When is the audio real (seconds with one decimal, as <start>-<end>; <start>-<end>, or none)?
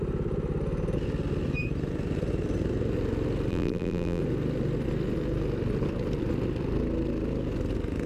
0.0-3.5; 4.2-8.1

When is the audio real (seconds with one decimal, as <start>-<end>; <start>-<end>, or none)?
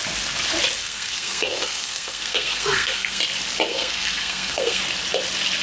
0.0-0.8; 3.2-3.7; 4.8-5.6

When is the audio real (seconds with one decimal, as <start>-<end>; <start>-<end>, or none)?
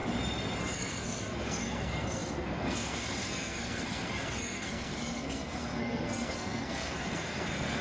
0.0-0.6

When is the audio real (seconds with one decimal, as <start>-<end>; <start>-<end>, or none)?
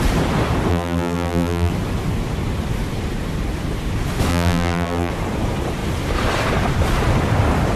0.0-0.7; 1.7-4.3; 5.1-7.8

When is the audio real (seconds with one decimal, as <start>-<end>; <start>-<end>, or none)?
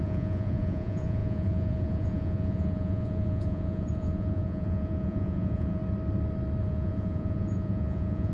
5.8-6.6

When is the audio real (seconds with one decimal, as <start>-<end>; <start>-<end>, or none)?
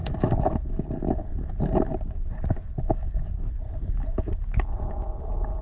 0.0-5.6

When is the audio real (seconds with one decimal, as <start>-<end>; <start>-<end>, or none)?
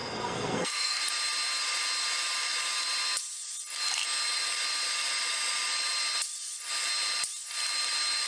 1.0-8.3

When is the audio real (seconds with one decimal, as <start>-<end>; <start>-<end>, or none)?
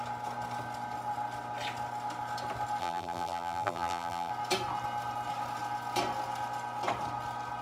0.0-2.8; 4.3-7.6